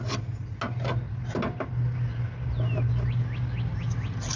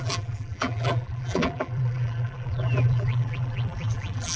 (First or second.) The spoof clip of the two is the second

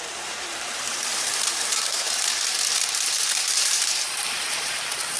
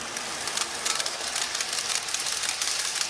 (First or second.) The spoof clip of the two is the first